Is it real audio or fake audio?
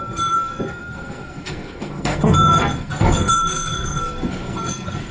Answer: fake